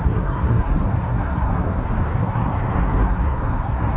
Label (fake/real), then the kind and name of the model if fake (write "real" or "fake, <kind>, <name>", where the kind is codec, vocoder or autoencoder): fake, codec, SNAC